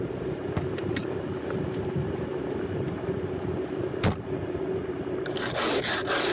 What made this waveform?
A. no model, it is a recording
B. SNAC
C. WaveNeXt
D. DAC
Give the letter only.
A